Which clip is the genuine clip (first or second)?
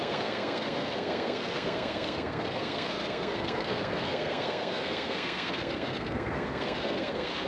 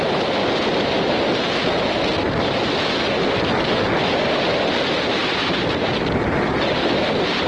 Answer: second